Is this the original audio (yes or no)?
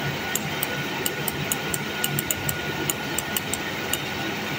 yes